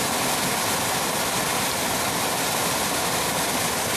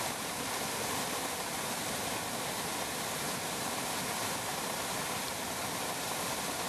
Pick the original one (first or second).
first